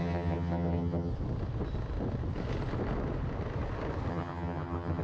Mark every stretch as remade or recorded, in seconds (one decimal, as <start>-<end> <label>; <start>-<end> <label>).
0.0-1.1 remade; 1.1-4.1 recorded; 4.1-5.0 remade